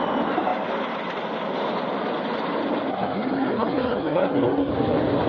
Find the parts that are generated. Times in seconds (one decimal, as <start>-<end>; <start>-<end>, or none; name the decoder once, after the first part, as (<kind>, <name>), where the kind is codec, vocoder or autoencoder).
2.9-4.7 (codec, SNAC)